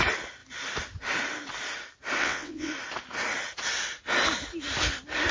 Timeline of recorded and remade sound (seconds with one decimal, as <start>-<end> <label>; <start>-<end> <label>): 0.0-2.2 recorded; 2.2-2.7 remade; 2.7-5.3 recorded